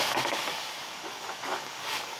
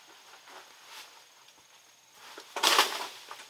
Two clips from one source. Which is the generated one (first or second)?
first